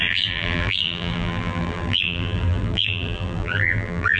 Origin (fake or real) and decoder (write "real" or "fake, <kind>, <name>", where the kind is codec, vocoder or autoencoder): fake, vocoder, BigVGAN v2